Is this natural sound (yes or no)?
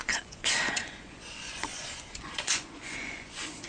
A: no